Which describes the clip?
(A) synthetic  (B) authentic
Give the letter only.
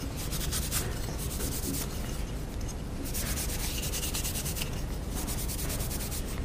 B